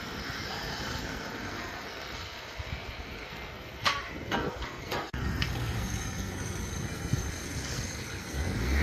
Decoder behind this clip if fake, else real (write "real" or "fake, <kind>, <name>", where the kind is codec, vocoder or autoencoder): fake, codec, SNAC